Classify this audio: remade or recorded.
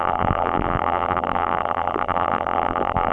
remade